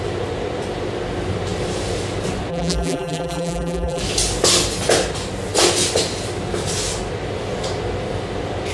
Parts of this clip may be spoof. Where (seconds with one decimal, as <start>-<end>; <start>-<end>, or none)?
2.5-4.0